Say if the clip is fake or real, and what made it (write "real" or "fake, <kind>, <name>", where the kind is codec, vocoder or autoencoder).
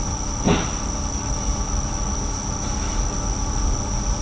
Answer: real